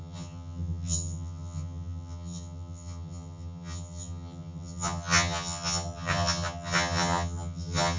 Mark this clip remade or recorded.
remade